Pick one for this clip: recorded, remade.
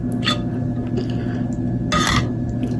recorded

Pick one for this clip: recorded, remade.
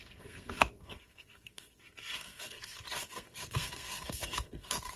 remade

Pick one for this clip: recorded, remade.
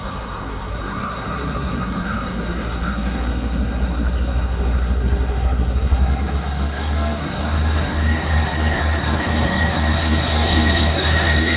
remade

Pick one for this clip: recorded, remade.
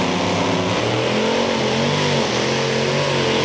recorded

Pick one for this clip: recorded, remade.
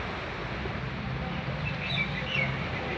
recorded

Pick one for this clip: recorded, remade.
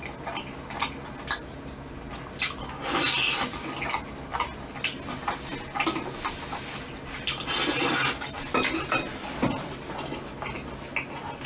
recorded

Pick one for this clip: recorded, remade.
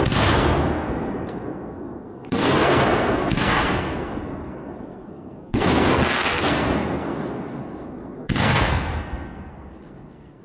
remade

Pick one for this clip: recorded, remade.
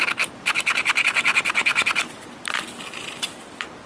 recorded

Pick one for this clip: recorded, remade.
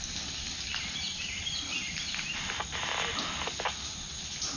recorded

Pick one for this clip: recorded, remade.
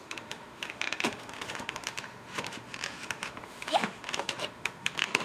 remade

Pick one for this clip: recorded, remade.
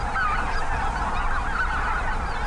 recorded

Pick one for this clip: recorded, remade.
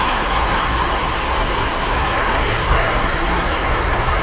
remade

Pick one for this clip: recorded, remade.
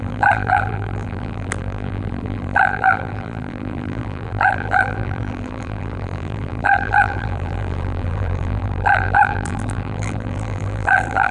remade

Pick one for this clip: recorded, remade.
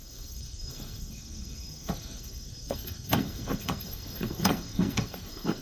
remade